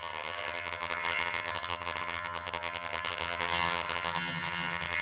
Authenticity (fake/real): fake